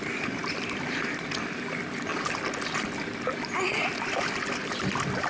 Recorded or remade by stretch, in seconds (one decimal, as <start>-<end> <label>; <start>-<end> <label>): 0.0-5.3 recorded